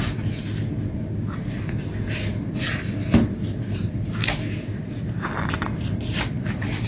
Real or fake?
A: real